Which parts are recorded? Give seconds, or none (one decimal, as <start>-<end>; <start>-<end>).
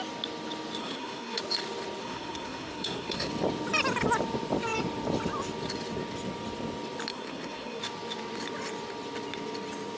0.0-0.8; 1.4-2.0; 3.3-7.1; 7.8-10.0